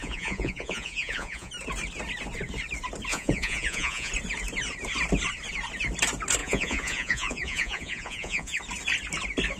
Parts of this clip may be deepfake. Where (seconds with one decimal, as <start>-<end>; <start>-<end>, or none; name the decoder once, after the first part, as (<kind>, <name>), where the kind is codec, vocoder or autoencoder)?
0.0-1.5 (vocoder, Vocos); 3.1-4.1; 6.4-8.6